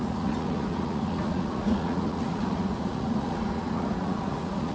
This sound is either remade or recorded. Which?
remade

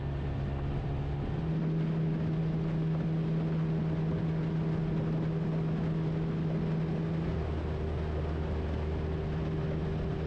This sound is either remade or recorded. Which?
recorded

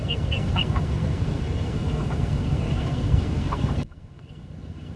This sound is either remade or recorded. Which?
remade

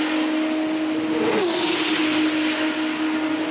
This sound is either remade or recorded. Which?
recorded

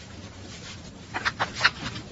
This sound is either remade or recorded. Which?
recorded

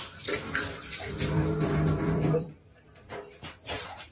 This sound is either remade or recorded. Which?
remade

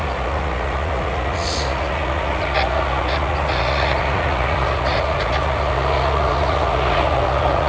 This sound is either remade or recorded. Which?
remade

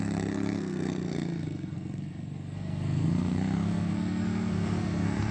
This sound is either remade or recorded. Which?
remade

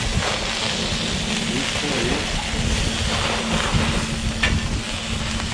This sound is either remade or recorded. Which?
recorded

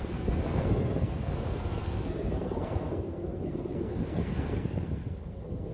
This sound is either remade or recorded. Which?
remade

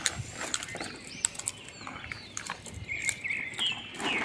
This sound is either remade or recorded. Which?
recorded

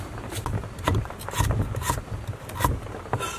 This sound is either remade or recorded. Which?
recorded